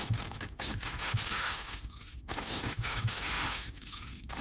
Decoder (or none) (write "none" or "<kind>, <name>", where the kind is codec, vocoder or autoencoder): autoencoder, DAC-VAE